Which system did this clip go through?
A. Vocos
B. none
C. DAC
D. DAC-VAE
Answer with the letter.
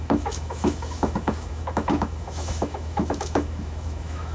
D